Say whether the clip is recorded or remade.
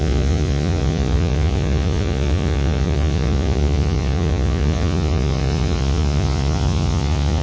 remade